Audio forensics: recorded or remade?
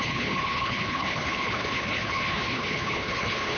remade